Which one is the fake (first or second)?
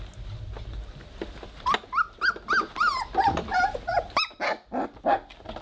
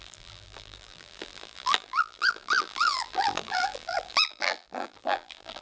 second